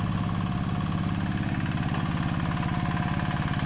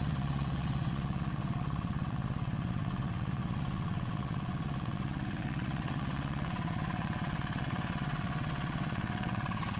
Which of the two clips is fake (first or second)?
second